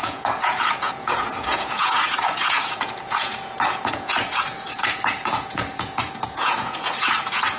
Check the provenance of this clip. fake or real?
fake